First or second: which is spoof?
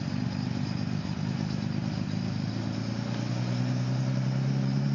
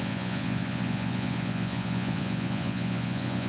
second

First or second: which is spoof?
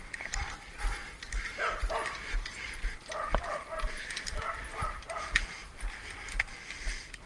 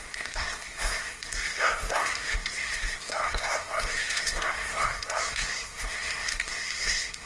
second